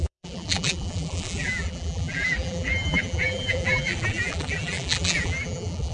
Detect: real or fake fake